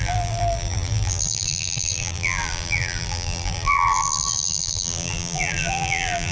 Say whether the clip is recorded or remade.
remade